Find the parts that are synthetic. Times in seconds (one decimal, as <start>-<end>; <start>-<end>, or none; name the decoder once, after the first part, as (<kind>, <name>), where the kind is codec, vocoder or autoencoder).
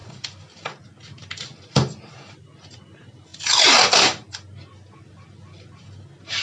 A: none